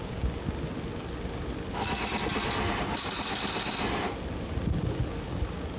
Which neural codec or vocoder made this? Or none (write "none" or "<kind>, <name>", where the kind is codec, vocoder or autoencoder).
none